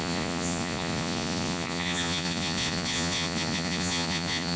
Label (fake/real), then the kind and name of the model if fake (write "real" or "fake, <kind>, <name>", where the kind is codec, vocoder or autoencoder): fake, vocoder, Vocos